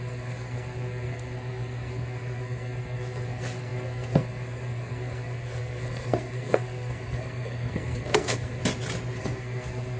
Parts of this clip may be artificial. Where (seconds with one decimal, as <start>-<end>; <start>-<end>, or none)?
0.0-8.6; 9.2-10.0